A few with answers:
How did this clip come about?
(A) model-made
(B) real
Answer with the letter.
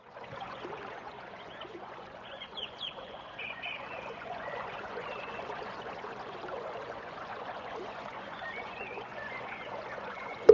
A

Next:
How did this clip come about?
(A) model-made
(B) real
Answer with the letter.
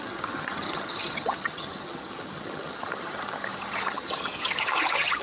A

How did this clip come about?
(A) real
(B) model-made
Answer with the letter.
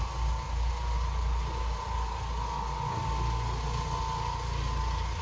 A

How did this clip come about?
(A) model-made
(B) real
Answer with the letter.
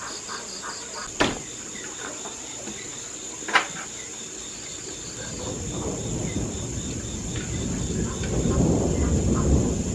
B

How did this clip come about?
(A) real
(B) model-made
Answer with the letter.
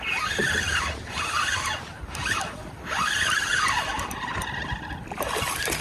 B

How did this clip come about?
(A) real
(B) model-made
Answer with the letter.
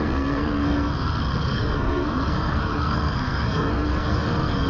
B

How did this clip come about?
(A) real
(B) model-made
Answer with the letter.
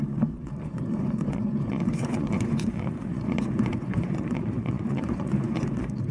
B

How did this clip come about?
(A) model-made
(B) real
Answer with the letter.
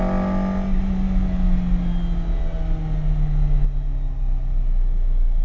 B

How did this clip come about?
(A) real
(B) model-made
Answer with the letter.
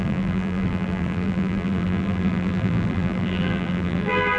B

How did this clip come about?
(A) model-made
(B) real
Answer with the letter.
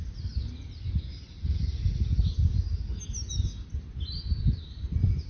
B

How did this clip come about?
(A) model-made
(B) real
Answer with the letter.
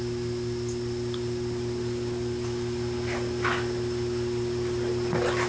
B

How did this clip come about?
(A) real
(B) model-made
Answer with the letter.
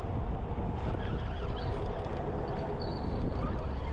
A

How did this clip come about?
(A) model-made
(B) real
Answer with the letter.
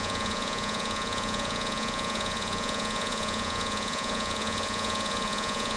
A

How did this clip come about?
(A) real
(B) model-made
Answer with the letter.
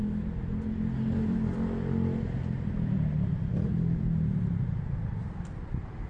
A